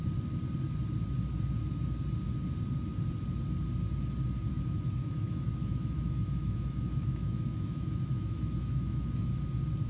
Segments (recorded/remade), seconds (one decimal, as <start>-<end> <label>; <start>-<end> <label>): 0.0-4.5 recorded; 4.5-9.3 remade; 9.3-9.9 recorded